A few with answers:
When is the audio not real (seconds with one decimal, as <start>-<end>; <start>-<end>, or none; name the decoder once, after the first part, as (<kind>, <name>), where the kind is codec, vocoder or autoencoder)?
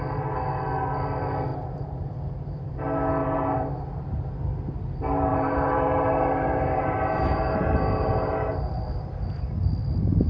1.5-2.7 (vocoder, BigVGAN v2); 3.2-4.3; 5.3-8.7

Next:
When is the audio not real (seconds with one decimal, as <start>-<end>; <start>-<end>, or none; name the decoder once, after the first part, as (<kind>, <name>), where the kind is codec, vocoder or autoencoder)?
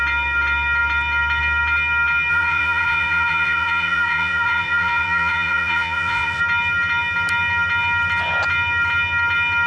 2.3-6.4 (vocoder, Vocos)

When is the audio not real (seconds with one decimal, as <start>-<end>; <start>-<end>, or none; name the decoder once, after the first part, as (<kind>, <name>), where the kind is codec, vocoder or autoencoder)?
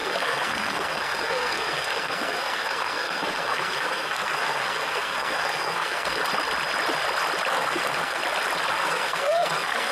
0.0-6.2 (codec, SNAC); 7.5-8.2; 8.7-9.9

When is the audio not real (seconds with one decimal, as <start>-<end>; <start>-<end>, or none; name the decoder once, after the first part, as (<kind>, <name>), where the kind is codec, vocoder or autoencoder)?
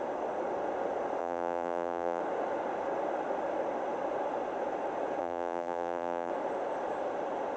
1.2-2.2 (vocoder, BigVGAN v2); 5.2-6.3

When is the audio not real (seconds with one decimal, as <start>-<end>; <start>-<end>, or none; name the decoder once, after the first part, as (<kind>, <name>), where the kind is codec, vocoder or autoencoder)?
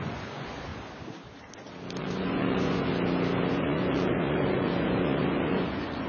0.0-0.7 (vocoder, Vocos); 2.0-2.9; 3.5-6.1